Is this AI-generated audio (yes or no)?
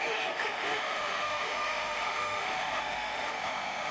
yes